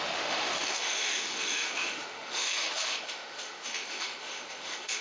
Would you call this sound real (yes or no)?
no